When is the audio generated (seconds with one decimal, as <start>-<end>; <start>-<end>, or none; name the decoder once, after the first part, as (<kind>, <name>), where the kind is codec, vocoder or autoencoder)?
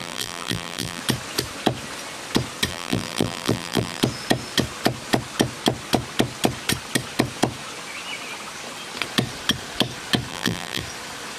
0.0-1.0 (vocoder, BigVGAN v2); 2.7-4.0; 10.3-10.8